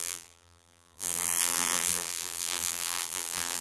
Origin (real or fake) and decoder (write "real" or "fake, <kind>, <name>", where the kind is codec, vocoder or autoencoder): fake, vocoder, BigVGAN v2